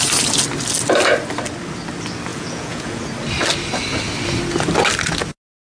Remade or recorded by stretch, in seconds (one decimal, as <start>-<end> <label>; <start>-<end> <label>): 0.0-2.3 recorded; 2.3-3.0 remade; 3.0-5.7 recorded